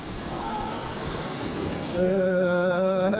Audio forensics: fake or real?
fake